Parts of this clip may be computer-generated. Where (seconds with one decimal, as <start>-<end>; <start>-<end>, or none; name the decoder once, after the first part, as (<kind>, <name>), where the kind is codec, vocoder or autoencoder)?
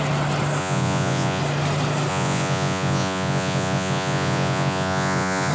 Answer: 0.6-1.4 (vocoder, Vocos); 2.1-5.5